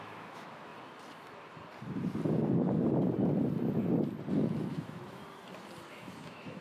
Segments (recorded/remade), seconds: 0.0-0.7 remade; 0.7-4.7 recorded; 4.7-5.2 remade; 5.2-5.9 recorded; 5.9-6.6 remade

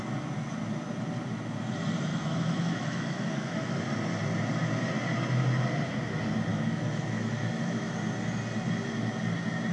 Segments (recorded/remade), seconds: 0.0-2.1 recorded; 2.1-3.8 remade; 3.8-6.5 recorded; 6.5-7.9 remade; 7.9-9.7 recorded